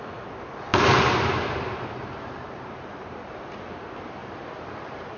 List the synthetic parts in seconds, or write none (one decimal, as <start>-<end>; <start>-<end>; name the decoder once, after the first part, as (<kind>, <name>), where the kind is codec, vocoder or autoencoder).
0.7-3.8 (vocoder, BigVGAN v2); 4.2-5.2